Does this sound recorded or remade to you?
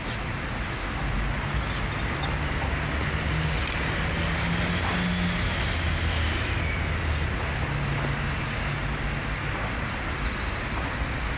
recorded